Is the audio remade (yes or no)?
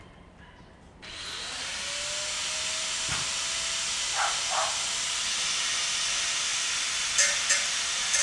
no